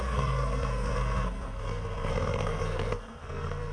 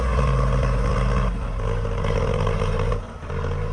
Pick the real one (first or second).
second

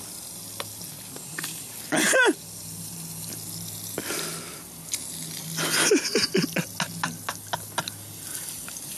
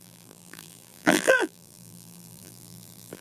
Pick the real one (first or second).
first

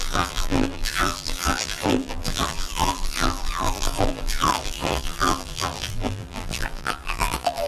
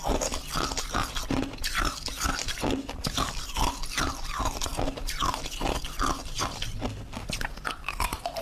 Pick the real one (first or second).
second